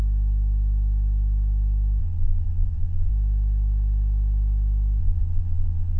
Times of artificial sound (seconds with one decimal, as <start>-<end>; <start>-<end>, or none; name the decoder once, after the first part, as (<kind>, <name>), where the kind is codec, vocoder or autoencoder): 2.0-3.1 (vocoder, Vocos); 5.0-6.0

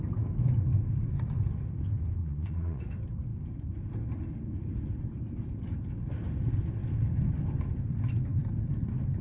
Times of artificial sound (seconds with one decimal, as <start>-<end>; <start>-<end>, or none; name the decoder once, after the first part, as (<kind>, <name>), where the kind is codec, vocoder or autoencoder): 2.2-2.8 (vocoder, Vocos)

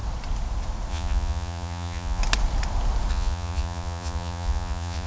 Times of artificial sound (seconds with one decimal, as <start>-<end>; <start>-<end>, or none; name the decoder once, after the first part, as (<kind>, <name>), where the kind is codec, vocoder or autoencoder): 0.9-2.2 (vocoder, Vocos); 3.1-5.1

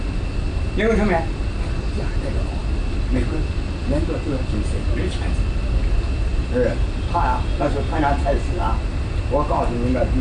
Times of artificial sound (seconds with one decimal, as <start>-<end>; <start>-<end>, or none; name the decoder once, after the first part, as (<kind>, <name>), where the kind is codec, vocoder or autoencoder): none

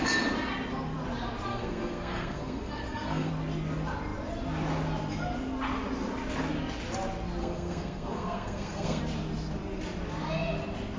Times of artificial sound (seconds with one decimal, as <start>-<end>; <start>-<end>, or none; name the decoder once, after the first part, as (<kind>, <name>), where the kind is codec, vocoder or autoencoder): 1.5-3.3 (codec, SNAC); 7.4-9.0

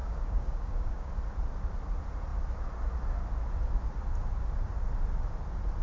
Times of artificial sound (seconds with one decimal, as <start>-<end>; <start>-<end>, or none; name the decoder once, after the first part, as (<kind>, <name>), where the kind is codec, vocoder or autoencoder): 0.0-1.1 (codec, DAC)

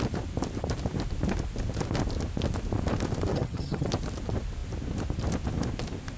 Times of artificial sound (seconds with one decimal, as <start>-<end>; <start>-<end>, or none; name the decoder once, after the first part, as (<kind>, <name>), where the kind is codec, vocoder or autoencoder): 3.3-3.9 (vocoder, HiFi-GAN)